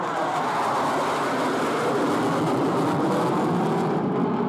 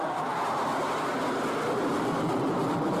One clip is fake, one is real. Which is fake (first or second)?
second